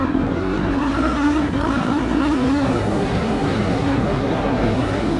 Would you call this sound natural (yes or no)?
no